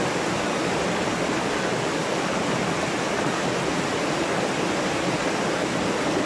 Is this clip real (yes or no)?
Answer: yes